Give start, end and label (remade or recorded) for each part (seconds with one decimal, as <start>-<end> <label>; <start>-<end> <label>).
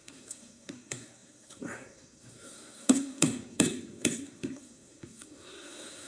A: 0.0-6.1 remade